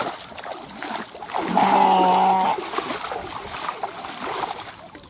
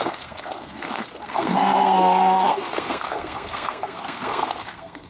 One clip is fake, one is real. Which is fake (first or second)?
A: second